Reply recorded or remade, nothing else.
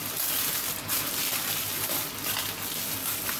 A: recorded